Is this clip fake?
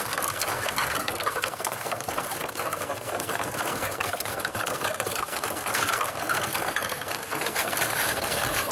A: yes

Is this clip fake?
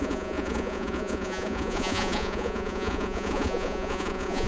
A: yes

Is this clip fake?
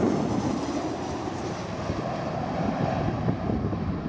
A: no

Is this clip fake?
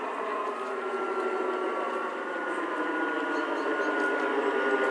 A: no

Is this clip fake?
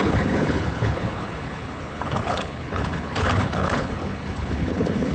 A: yes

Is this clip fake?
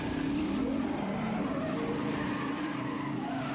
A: yes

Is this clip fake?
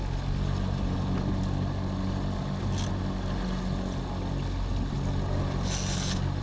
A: no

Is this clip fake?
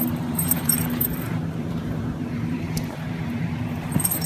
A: yes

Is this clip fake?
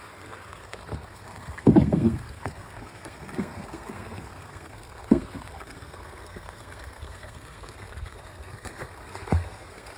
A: yes